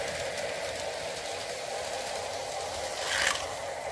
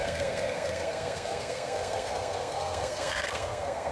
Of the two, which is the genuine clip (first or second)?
first